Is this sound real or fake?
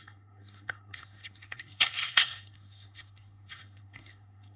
fake